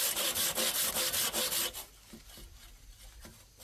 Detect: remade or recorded recorded